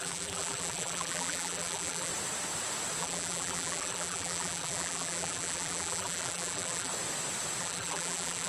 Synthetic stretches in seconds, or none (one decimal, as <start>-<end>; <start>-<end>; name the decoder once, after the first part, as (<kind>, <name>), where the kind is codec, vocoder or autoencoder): 0.0-2.1 (vocoder, BigVGAN v2); 3.0-6.9; 7.6-8.5

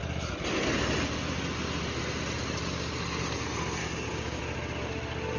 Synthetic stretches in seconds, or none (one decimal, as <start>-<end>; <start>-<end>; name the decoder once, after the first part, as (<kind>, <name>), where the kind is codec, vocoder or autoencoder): 3.8-4.4 (codec, DAC)

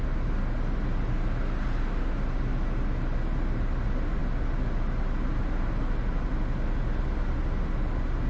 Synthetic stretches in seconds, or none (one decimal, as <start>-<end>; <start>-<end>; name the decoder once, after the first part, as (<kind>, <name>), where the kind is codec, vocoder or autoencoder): none

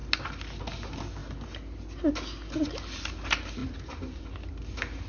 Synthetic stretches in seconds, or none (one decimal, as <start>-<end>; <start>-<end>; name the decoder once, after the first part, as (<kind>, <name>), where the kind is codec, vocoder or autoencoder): none

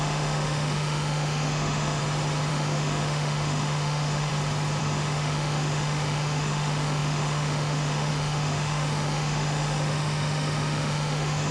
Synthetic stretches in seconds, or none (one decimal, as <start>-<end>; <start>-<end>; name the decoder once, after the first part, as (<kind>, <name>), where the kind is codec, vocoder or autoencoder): 0.0-2.0 (autoencoder, DAC-VAE); 2.5-4.3; 4.8-11.5

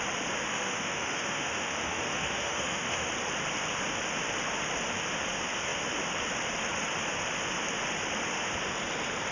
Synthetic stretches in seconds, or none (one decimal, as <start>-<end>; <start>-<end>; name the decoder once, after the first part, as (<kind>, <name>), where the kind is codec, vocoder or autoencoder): 0.5-3.1 (autoencoder, DAC-VAE)

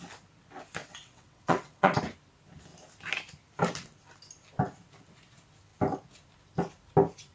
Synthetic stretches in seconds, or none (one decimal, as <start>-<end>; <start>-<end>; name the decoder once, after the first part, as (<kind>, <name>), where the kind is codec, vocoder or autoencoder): 0.8-2.0 (vocoder, WaveNeXt)